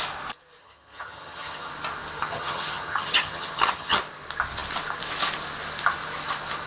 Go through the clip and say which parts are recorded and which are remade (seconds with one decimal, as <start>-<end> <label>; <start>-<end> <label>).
0.0-0.6 recorded; 0.6-1.7 remade; 1.7-2.2 recorded; 2.2-4.0 remade; 4.0-6.7 recorded